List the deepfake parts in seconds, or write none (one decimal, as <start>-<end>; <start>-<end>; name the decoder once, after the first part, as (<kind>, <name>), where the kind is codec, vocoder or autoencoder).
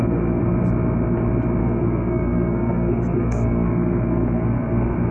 0.0-0.4 (codec, SNAC); 1.6-5.1